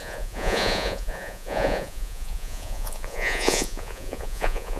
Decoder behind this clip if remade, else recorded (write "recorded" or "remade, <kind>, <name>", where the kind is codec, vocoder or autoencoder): remade, vocoder, Vocos